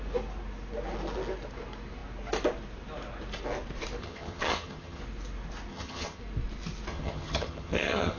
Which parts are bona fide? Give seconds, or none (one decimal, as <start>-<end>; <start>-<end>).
0.0-4.0; 5.0-5.7; 6.2-6.9